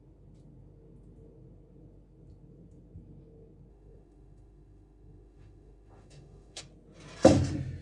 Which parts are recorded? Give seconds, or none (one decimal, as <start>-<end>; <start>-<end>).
0.0-3.7; 6.6-7.8